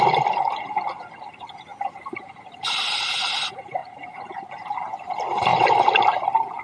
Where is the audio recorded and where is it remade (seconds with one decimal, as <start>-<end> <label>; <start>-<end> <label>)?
0.0-5.5 recorded; 5.5-6.6 remade